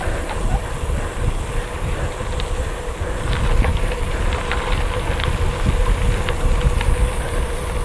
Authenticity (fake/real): real